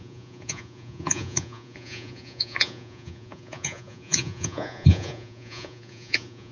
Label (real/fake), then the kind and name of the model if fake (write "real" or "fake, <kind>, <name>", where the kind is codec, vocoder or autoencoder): fake, vocoder, Vocos